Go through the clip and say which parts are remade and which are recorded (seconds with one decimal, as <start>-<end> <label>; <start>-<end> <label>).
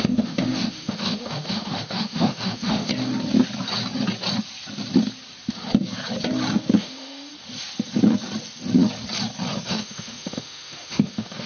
0.0-2.9 remade; 2.9-6.8 recorded; 6.8-7.3 remade; 7.3-9.7 recorded; 9.7-11.5 remade